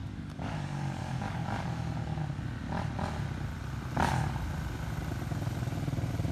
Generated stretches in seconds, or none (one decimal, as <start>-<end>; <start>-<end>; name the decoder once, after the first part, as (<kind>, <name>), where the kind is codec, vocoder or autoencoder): 0.0-2.2 (codec, DAC)